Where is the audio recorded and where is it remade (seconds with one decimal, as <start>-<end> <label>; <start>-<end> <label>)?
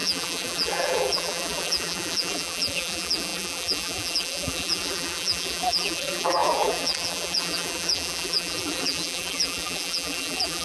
0.0-10.6 remade